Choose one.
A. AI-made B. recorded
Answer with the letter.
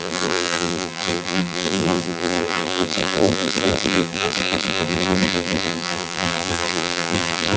A